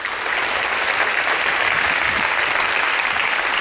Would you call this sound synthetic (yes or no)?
no